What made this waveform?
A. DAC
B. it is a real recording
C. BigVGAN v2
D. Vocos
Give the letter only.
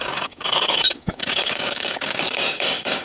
A